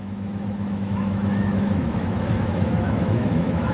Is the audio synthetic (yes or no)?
yes